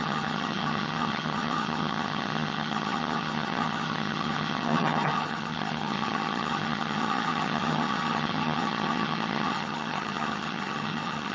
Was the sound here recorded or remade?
remade